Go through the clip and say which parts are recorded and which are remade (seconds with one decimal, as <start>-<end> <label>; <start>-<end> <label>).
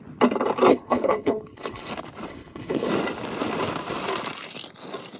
0.0-0.7 recorded; 0.7-1.9 remade; 1.9-2.3 recorded; 2.3-2.9 remade; 2.9-5.2 recorded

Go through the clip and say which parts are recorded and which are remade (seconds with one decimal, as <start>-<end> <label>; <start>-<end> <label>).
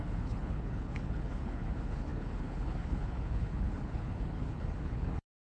0.0-5.5 remade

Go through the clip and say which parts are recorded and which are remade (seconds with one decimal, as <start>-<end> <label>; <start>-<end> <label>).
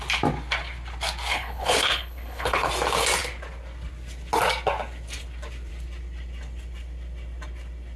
0.0-1.3 recorded; 1.3-2.7 remade; 2.7-8.0 recorded